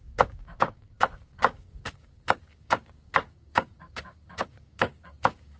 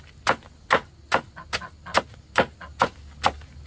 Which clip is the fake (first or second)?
first